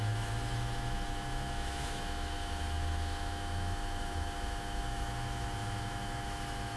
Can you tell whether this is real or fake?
fake